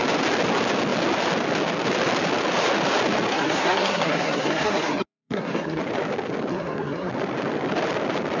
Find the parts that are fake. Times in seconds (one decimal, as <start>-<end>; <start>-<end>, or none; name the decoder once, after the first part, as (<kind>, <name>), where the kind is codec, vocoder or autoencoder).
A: 3.3-5.8 (codec, SNAC); 6.5-7.1